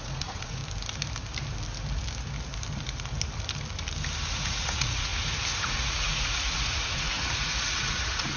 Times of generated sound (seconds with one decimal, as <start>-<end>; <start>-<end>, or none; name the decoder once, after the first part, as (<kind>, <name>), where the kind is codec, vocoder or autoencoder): 0.0-0.6 (vocoder, Vocos); 4.3-5.1; 5.6-8.4